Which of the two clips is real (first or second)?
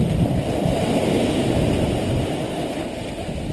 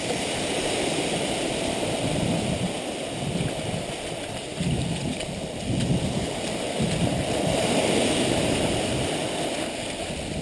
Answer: first